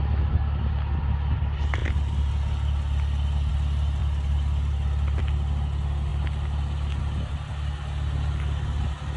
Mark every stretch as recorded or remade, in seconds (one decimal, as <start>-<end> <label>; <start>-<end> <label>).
0.0-9.2 recorded